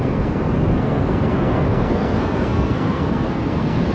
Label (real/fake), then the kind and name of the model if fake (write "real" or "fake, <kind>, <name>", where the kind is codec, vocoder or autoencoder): fake, codec, SNAC